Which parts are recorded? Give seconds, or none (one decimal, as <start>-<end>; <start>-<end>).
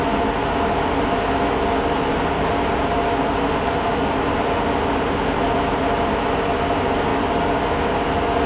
0.0-8.5